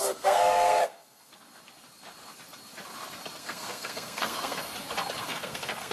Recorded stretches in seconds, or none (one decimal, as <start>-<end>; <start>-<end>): 1.3-3.4; 4.7-5.2